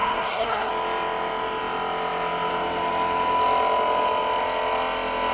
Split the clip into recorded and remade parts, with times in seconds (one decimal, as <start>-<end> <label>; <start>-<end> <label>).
0.0-0.7 remade; 0.7-5.3 recorded